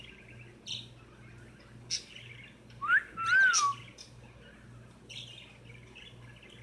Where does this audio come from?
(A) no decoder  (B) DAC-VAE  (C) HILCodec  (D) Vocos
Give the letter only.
A